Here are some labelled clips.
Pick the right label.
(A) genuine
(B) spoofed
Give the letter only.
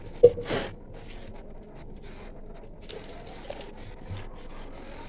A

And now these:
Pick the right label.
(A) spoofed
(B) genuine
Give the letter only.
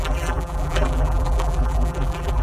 A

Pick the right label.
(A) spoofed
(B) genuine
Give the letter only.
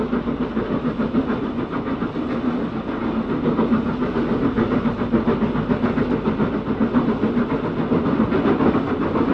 B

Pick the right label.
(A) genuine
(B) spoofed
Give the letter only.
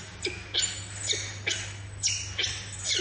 A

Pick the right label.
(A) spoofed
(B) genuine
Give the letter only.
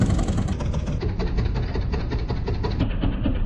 A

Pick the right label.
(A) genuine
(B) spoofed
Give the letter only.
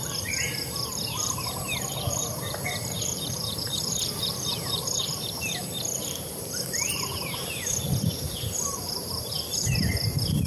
B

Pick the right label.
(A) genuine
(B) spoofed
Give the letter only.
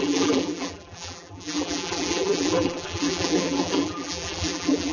B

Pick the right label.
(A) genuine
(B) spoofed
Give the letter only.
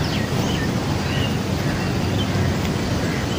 A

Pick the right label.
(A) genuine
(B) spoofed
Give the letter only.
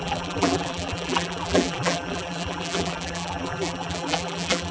B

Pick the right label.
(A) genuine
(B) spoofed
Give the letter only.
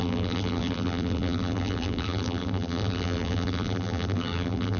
B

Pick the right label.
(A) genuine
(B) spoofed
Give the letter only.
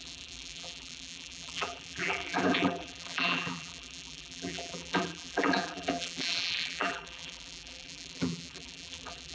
B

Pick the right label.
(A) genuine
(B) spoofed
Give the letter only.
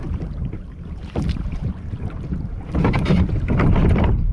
B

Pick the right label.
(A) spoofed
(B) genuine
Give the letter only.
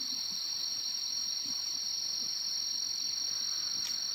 B